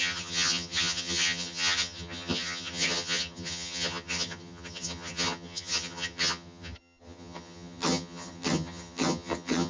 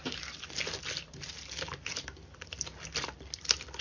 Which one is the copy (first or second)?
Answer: first